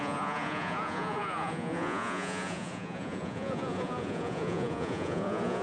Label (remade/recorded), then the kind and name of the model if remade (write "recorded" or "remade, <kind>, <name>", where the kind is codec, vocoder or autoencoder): remade, vocoder, Vocos